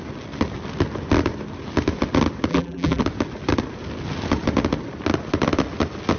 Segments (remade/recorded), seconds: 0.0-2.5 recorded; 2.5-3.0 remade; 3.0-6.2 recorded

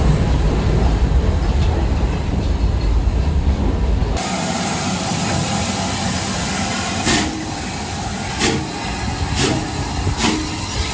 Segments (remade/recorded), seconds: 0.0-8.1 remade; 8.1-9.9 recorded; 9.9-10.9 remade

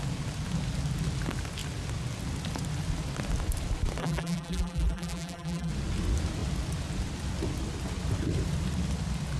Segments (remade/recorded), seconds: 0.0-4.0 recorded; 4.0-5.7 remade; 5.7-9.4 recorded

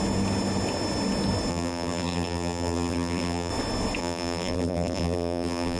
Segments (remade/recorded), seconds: 0.0-1.5 recorded; 1.5-3.5 remade; 3.5-4.0 recorded; 4.0-5.8 remade

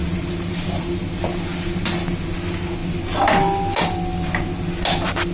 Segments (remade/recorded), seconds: 0.0-0.8 remade; 0.8-5.3 recorded